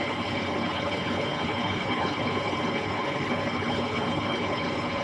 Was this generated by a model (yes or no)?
yes